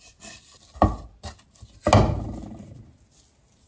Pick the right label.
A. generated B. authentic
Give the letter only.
B